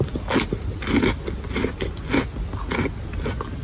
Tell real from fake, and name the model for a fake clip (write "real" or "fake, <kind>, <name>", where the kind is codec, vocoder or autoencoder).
real